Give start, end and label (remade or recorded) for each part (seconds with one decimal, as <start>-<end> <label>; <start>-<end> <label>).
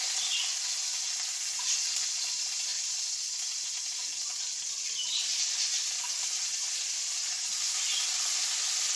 0.0-9.0 recorded